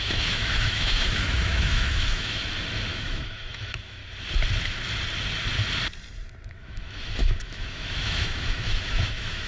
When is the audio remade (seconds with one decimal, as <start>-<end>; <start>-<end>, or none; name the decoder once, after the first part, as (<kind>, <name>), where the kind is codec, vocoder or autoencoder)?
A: 0.0-2.4 (autoencoder, DAC-VAE); 2.9-4.0; 6.5-9.5